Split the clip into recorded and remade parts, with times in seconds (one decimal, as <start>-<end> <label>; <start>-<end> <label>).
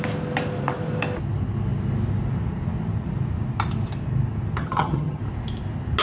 0.0-4.6 recorded; 4.6-5.2 remade; 5.2-6.0 recorded